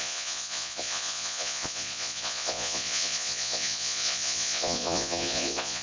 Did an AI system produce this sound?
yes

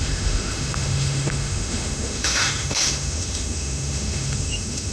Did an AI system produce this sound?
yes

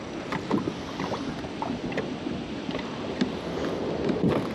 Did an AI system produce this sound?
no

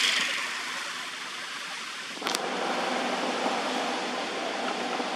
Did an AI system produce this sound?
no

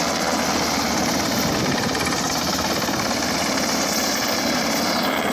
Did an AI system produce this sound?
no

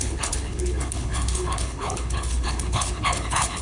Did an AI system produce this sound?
yes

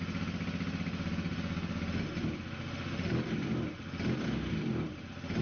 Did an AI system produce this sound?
no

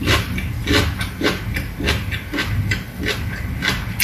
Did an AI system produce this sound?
no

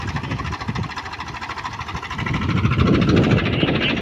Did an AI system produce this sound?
no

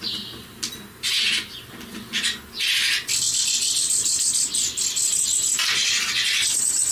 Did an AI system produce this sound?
no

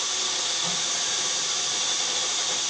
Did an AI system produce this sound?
no